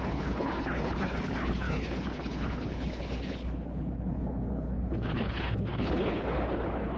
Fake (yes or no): yes